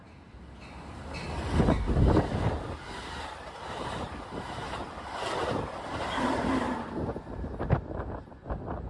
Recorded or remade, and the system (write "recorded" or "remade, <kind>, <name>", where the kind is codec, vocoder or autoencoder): recorded